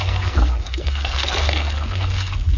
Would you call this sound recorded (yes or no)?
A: no